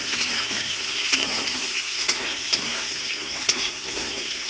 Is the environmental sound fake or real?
fake